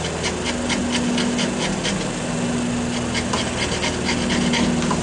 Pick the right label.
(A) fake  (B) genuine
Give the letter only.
B